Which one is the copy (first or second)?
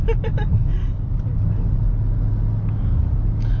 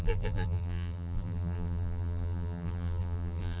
second